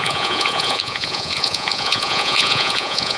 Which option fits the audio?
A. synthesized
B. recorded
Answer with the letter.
A